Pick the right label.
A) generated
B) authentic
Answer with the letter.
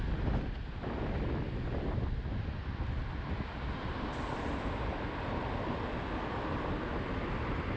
B